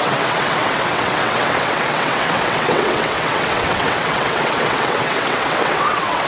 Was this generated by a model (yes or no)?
yes